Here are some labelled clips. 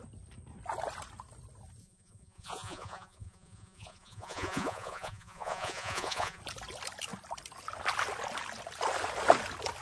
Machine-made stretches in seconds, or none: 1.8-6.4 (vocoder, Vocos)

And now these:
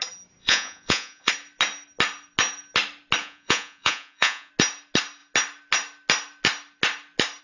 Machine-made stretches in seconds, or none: 0.4-1.3 (vocoder, Vocos); 3.2-4.5

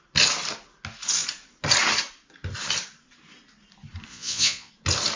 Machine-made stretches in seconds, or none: 4.1-4.7 (vocoder, Vocos)

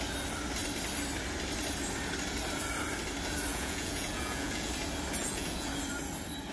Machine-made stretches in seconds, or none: 3.5-4.7 (vocoder, Vocos); 5.2-5.7

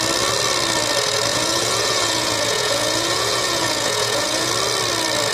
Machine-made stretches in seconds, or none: 1.3-4.5 (vocoder, Vocos)

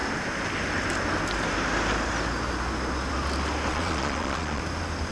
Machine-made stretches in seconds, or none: 3.7-4.6 (vocoder, Vocos)

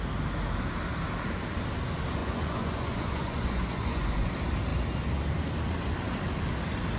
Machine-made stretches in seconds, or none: 2.2-4.3 (vocoder, Vocos)

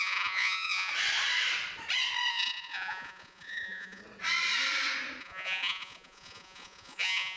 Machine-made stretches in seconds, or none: 0.0-0.9 (vocoder, Vocos); 2.3-4.0; 5.2-7.4